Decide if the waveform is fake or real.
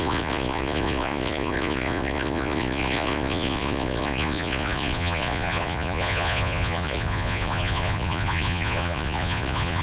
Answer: fake